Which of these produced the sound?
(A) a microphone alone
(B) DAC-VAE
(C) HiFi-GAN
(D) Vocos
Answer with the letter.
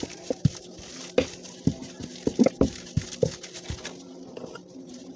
A